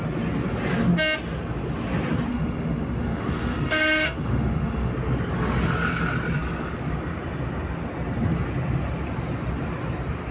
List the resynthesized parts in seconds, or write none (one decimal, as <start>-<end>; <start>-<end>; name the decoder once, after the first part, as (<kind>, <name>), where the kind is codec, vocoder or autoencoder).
2.3-4.9 (autoencoder, DAC-VAE)